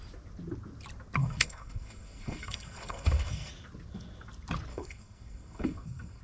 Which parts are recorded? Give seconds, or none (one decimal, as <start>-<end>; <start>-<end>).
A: 0.0-1.2; 3.5-4.7